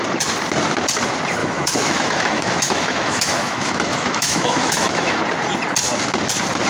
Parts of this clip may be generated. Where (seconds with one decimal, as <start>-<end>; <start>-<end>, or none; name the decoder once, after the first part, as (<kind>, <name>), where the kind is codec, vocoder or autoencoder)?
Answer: 1.4-5.2 (autoencoder, DAC-VAE)